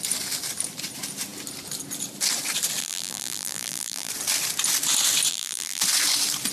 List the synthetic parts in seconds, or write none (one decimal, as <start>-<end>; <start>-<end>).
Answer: 2.8-4.1; 5.3-5.8